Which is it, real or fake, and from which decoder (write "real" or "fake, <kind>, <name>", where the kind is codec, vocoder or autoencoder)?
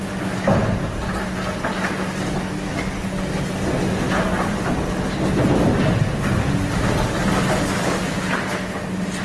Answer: real